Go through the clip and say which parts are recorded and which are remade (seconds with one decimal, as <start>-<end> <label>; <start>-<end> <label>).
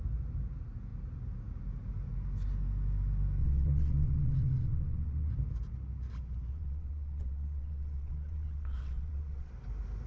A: 0.0-3.4 recorded; 3.4-5.3 remade; 5.3-6.5 recorded; 6.5-9.5 remade; 9.5-10.1 recorded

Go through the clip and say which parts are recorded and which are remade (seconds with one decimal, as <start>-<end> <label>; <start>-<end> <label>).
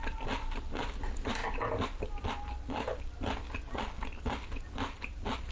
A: 0.0-2.9 recorded; 2.9-3.8 remade; 3.8-5.5 recorded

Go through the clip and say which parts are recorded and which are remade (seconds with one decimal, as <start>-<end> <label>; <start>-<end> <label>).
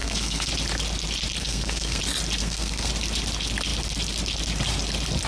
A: 0.0-0.5 remade; 0.5-1.4 recorded; 1.4-2.0 remade; 2.0-2.4 recorded; 2.4-2.9 remade; 2.9-5.3 recorded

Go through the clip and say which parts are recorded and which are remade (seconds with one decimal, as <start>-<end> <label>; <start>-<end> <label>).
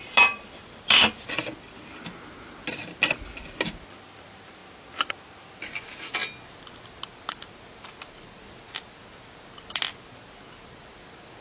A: 0.0-11.4 recorded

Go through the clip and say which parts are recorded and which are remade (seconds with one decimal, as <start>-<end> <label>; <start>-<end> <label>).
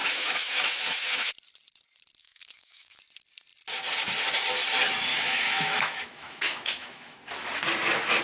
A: 0.0-1.3 remade; 1.3-2.2 recorded; 2.2-3.0 remade; 3.0-5.1 recorded; 5.1-7.2 remade; 7.2-8.2 recorded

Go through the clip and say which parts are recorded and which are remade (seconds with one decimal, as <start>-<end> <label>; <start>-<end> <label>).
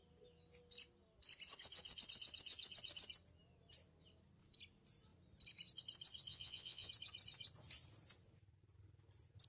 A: 0.0-6.3 recorded; 6.3-6.9 remade; 6.9-9.5 recorded